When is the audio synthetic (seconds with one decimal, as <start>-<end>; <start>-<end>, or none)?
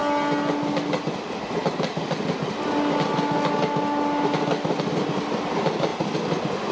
none